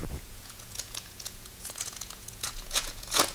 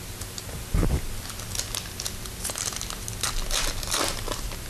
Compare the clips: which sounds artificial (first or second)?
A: first